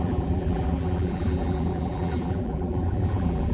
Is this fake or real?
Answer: fake